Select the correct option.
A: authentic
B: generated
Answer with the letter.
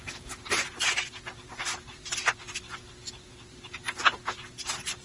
A